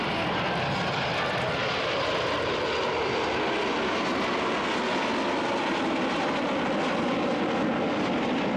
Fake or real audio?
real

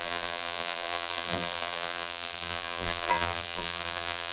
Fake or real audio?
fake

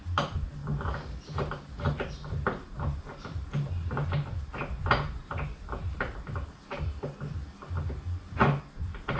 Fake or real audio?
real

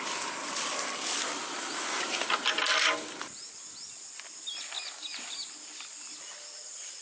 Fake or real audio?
real